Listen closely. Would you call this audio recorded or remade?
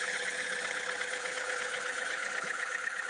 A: remade